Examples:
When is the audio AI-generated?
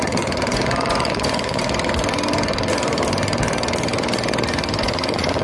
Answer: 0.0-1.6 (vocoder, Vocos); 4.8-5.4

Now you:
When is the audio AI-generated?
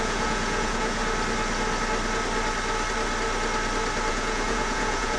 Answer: 0.0-1.0 (vocoder, Vocos); 4.1-5.2